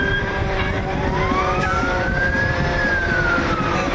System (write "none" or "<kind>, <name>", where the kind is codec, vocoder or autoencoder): vocoder, BigVGAN v2